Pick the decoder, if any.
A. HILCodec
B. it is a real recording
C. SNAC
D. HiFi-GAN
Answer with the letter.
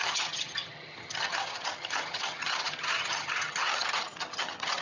D